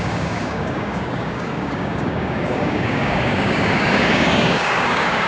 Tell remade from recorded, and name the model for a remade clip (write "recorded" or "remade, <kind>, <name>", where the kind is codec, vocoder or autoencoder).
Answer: remade, codec, DAC